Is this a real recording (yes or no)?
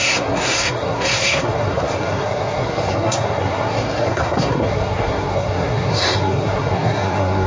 no